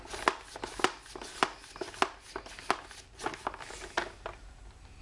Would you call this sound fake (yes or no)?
no